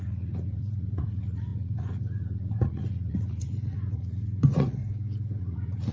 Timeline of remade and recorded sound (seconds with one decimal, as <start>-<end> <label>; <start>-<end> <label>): 0.0-4.8 remade; 4.8-5.4 recorded; 5.4-5.9 remade